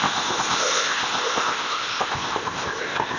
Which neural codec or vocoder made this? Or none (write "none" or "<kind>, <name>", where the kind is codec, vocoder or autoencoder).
codec, ZipCodec